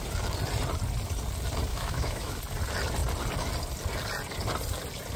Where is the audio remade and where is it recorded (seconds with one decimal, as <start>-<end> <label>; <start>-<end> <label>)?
0.0-1.7 recorded; 1.7-2.4 remade; 2.4-5.2 recorded